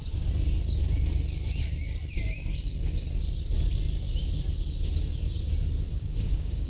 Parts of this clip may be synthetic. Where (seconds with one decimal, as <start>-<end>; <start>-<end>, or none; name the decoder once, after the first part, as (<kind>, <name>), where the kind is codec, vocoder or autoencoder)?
5.9-6.7 (codec, DAC)